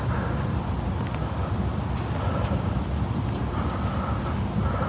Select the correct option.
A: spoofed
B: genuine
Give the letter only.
B